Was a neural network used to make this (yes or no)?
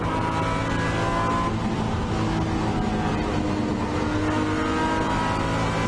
no